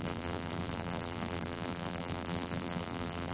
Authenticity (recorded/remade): remade